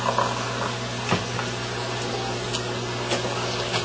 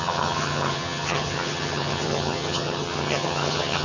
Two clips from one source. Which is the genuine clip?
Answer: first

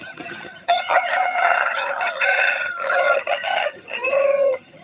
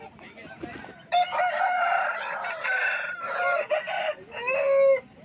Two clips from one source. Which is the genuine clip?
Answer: second